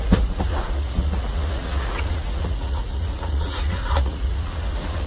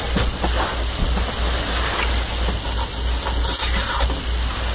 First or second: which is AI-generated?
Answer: first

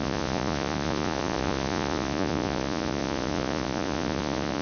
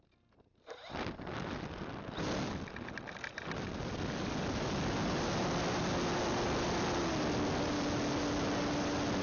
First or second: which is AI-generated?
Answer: first